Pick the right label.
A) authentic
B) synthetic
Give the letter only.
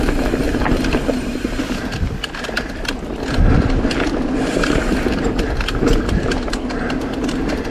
A